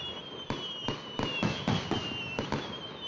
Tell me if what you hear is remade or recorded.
recorded